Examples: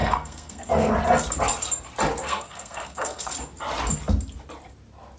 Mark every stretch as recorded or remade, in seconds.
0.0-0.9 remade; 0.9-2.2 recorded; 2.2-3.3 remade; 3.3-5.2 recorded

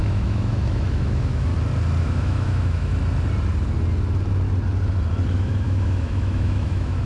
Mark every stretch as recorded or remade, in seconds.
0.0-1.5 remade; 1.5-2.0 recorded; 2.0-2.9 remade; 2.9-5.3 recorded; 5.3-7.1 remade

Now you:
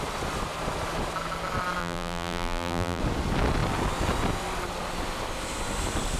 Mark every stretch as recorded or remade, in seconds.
0.0-1.8 recorded; 1.8-3.0 remade; 3.0-6.2 recorded

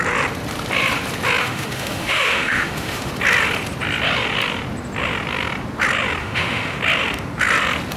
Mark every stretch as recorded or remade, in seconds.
0.0-1.4 recorded; 1.4-3.1 remade; 3.1-6.2 recorded; 6.2-6.8 remade; 6.8-8.0 recorded

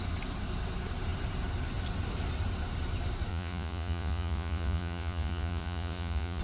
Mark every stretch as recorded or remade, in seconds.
0.0-3.3 recorded; 3.3-6.4 remade